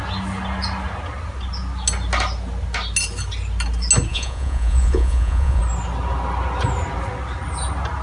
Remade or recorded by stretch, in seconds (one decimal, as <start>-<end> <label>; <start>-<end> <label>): 0.0-4.1 recorded; 4.1-5.6 remade; 5.6-8.0 recorded